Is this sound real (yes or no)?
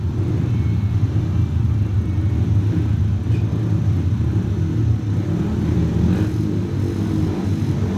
yes